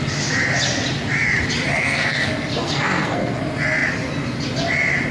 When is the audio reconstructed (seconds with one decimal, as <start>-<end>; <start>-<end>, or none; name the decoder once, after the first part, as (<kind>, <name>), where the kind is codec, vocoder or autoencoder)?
1.7-3.4 (codec, SNAC)